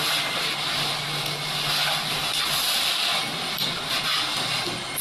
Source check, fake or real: real